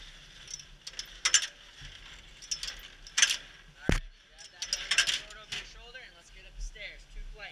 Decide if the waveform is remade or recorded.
recorded